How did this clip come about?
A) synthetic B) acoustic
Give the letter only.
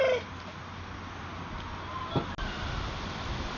B